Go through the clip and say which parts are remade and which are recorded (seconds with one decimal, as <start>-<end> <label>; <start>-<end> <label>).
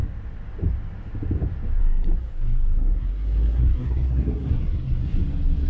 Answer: 0.0-1.8 recorded; 1.8-5.2 remade; 5.2-5.7 recorded